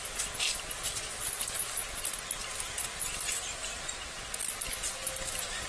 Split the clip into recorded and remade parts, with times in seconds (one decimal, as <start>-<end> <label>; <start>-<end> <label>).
0.0-1.8 remade; 1.8-4.5 recorded; 4.5-5.0 remade; 5.0-5.7 recorded